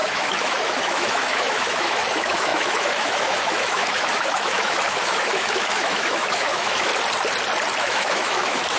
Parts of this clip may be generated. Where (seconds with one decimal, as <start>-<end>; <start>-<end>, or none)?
0.0-6.9; 7.8-8.8